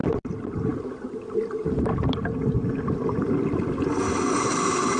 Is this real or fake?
real